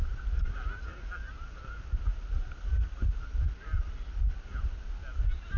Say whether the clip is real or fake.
real